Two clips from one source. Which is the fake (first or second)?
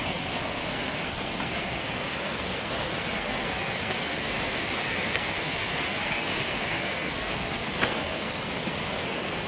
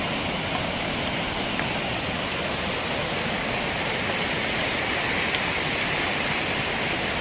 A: first